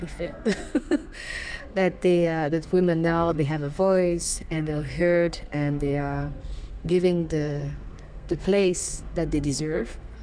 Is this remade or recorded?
remade